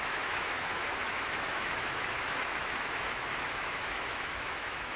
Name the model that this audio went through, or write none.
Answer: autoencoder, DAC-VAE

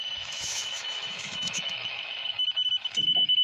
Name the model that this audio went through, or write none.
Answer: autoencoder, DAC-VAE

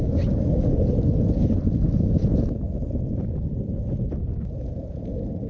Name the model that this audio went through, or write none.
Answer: none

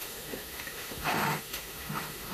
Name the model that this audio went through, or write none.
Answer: autoencoder, DAC-VAE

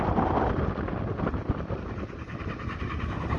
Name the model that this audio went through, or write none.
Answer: none